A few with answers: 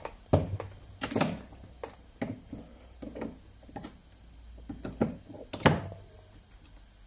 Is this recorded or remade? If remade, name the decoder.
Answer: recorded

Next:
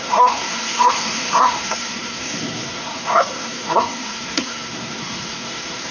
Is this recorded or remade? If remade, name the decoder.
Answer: remade, codec, SNAC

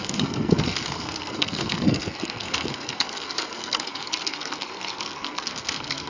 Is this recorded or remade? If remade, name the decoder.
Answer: remade, codec, SNAC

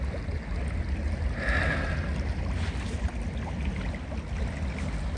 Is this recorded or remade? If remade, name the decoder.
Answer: recorded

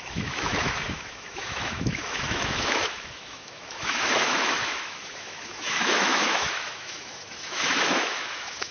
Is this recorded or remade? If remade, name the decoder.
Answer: remade, autoencoder, DAC-VAE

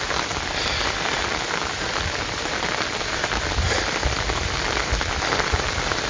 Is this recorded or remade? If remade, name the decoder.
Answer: recorded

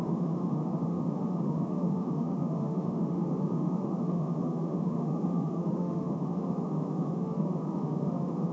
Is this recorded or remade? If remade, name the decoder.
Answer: remade, autoencoder, DAC-VAE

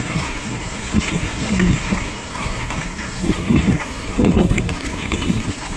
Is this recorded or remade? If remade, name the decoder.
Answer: remade, codec, SNAC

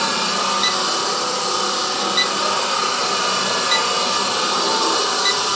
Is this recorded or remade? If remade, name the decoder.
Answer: recorded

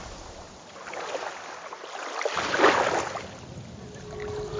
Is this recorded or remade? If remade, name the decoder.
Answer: recorded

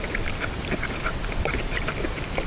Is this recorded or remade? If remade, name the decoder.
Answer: recorded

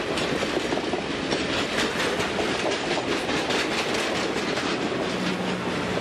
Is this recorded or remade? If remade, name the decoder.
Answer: recorded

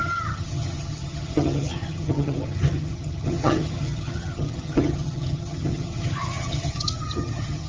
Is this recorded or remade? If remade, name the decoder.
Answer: remade, vocoder, HiFi-GAN